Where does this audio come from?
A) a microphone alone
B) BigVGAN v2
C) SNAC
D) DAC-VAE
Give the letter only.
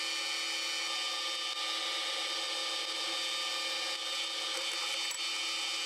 A